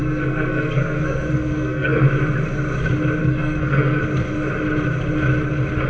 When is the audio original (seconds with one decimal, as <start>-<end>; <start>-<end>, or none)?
2.0-3.2; 4.0-5.9